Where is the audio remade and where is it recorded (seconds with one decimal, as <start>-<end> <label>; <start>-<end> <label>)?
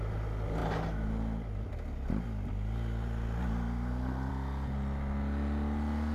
0.0-6.1 recorded